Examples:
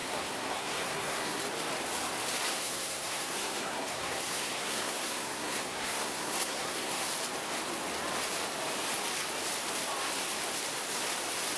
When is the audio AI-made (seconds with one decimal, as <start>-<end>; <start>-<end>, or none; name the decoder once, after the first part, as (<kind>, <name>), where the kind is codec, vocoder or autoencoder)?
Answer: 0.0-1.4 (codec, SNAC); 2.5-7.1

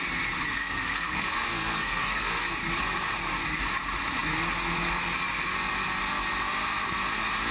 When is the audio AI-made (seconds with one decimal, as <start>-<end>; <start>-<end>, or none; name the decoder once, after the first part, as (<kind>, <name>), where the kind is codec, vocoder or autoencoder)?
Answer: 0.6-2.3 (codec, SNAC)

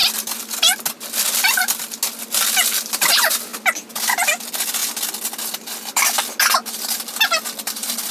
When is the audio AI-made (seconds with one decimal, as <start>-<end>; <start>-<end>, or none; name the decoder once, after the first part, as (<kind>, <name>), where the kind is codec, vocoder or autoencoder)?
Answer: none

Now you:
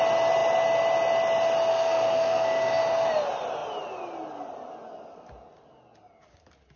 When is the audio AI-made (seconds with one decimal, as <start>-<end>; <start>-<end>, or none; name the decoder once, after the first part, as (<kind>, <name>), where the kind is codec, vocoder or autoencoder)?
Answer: 1.7-2.8 (codec, SNAC)

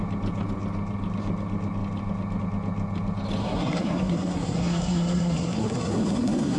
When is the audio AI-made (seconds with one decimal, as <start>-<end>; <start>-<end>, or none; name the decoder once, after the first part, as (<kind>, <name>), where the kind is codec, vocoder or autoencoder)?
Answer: 3.4-6.6 (codec, SNAC)